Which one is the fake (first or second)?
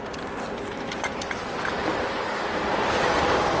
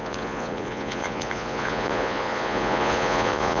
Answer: second